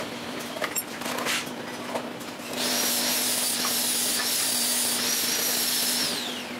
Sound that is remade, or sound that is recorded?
remade